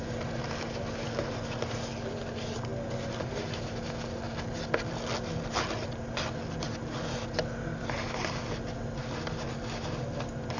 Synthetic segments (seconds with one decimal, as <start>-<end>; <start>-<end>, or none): none